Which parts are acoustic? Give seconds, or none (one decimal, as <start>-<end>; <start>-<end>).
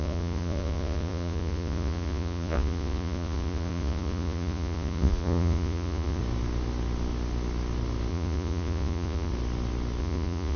6.2-8.1; 9.3-10.0